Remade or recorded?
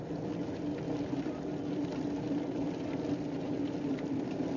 recorded